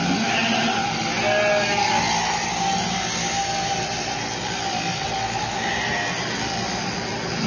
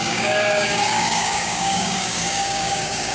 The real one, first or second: first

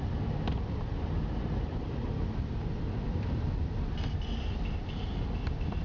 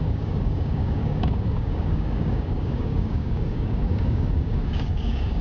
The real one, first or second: first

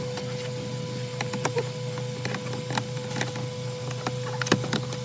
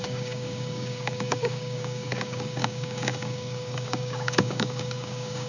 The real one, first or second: first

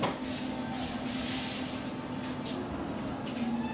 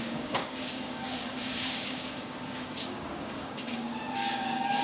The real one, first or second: first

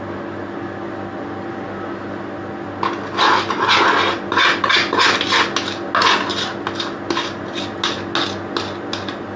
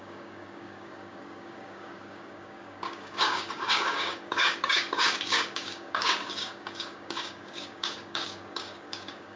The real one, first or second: first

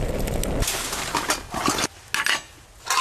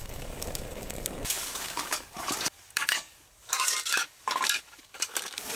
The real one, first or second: first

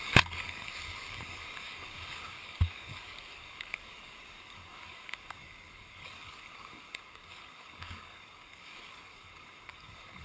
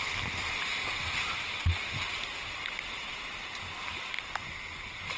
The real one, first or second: second